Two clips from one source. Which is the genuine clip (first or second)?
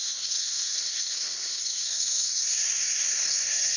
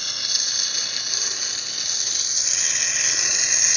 second